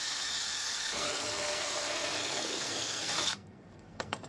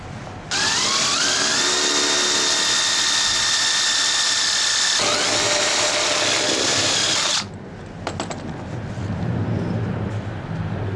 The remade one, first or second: first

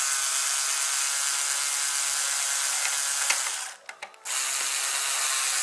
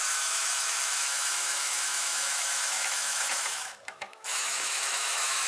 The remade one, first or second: second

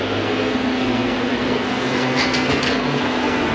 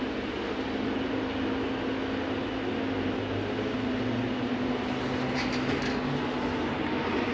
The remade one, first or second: first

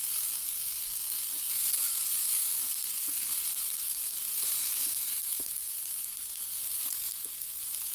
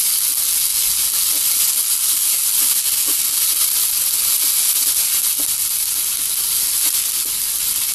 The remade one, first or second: first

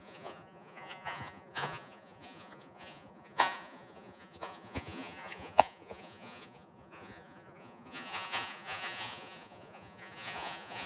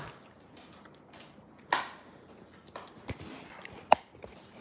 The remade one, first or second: first